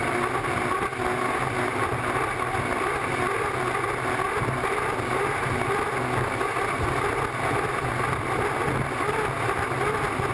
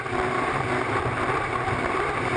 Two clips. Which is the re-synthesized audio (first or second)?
second